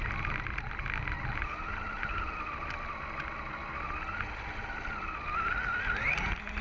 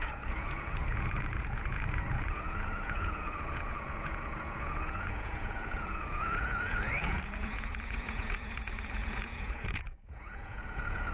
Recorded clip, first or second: first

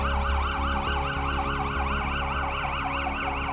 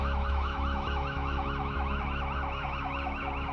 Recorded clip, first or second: first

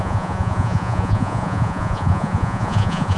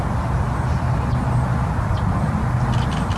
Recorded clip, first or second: second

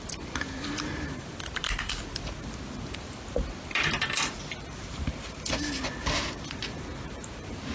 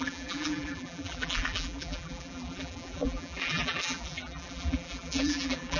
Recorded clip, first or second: first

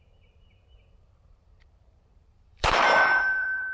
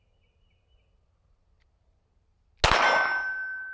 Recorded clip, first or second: second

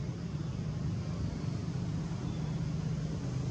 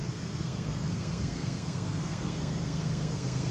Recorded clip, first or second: first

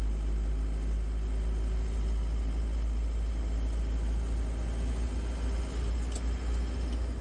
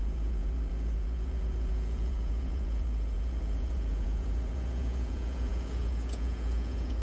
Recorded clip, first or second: first